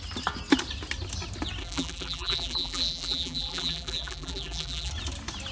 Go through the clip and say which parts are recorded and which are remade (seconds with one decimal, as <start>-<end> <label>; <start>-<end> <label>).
0.0-1.6 recorded; 1.6-4.9 remade; 4.9-5.5 recorded